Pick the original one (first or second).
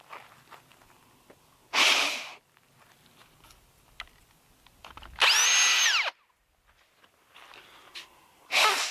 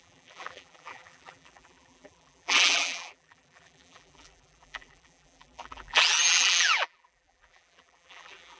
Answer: first